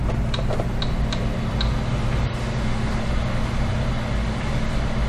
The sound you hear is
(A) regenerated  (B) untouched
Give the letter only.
B